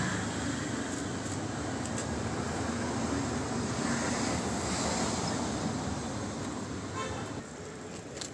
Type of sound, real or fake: real